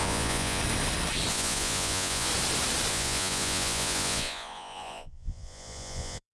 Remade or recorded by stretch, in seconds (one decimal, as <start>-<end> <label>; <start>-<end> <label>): 0.0-0.6 remade; 0.6-1.3 recorded; 1.3-2.3 remade; 2.3-2.9 recorded; 2.9-6.3 remade